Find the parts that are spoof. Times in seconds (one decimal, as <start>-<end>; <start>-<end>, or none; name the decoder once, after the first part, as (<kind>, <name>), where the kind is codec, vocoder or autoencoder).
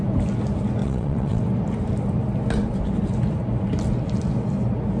0.8-1.4 (vocoder, WaveNeXt)